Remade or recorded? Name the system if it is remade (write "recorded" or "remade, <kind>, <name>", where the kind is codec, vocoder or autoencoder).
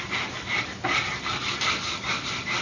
remade, vocoder, BigVGAN v2